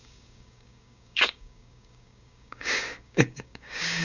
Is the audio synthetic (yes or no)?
yes